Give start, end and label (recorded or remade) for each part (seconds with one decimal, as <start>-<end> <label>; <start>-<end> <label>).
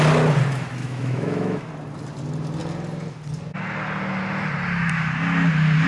0.0-0.8 recorded; 0.8-1.7 remade; 1.7-5.9 recorded